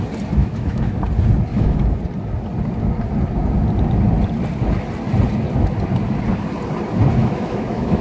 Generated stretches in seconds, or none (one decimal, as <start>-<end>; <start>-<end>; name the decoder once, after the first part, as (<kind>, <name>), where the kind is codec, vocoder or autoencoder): 0.4-0.9 (autoencoder, DAC-VAE); 1.5-2.0; 7.2-8.0